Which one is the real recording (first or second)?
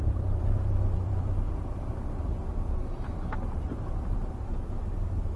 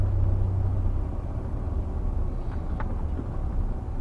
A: second